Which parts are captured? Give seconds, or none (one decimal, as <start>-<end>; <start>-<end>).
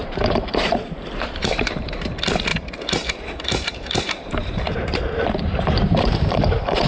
1.8-2.5